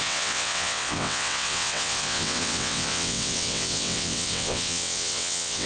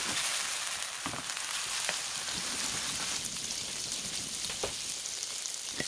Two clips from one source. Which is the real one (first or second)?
second